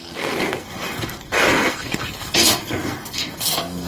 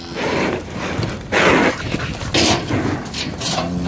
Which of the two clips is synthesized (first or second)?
first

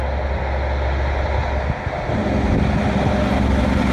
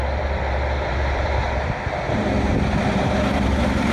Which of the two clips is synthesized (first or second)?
second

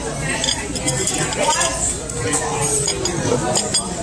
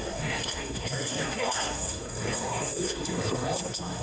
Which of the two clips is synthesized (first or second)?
second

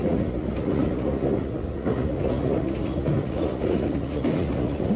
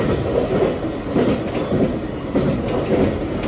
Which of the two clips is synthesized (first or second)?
first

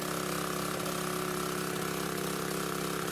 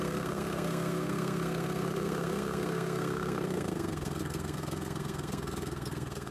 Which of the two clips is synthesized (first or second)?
second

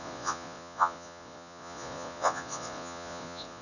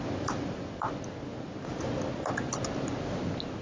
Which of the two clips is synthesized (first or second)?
first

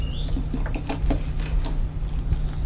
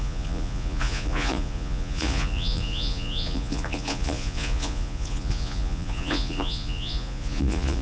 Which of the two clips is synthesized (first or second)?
second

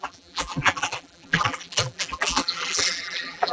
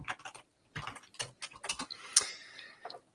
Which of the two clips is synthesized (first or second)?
first